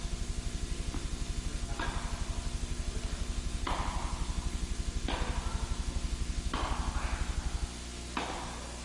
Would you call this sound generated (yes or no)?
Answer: no